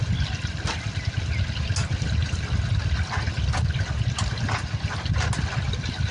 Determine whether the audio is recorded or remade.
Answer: recorded